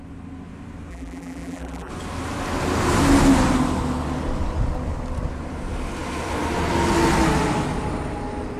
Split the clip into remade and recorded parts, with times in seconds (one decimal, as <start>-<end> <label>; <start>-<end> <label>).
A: 0.0-0.9 recorded; 0.9-1.9 remade; 1.9-8.6 recorded